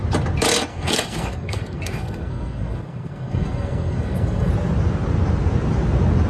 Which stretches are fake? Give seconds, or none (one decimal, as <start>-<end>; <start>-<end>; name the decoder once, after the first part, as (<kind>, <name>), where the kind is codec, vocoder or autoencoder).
0.7-4.5 (codec, SNAC)